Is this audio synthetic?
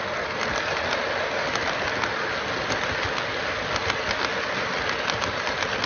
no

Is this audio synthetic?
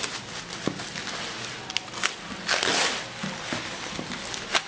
no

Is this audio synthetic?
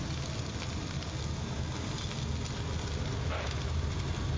no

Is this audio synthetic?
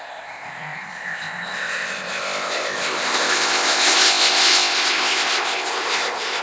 yes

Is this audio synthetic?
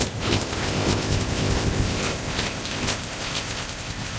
yes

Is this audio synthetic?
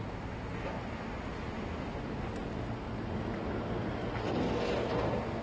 no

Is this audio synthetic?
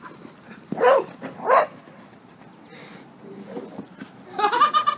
no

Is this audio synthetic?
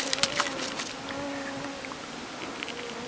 no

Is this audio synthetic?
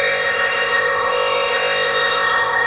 yes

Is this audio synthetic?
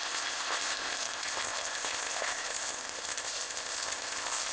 yes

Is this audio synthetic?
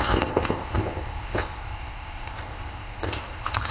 yes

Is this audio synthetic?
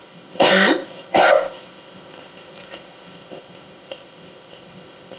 yes